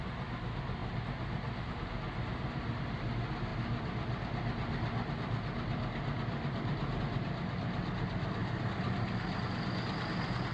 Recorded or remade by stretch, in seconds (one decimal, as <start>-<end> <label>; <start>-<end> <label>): 0.0-10.5 recorded